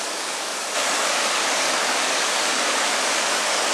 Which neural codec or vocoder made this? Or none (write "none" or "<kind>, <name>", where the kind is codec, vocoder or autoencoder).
codec, DAC